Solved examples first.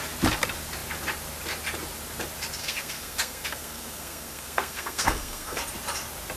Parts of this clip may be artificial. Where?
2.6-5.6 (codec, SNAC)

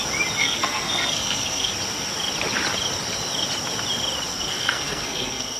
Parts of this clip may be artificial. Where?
0.4-1.7 (codec, SNAC); 4.3-5.6